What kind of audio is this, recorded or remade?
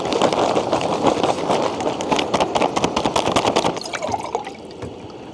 recorded